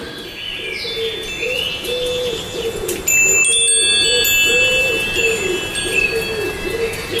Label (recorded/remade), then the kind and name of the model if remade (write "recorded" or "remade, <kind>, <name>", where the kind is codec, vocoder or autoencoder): recorded